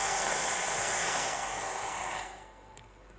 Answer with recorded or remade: remade